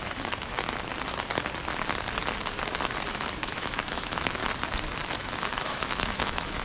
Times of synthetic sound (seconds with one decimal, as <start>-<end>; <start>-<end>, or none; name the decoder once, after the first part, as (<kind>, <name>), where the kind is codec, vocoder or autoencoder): 0.0-0.9 (autoencoder, DAC-VAE); 3.1-4.4; 5.0-6.6